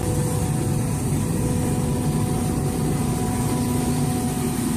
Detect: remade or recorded recorded